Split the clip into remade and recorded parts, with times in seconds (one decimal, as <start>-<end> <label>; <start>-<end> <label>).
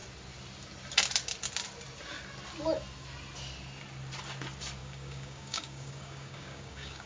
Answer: 0.0-4.8 recorded; 4.8-7.1 remade